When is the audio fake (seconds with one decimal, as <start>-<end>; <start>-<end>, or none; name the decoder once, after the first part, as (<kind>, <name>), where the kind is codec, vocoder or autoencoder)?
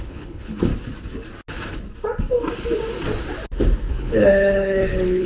0.0-0.7 (codec, HILCodec); 3.9-5.3